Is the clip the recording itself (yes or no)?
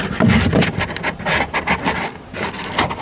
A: yes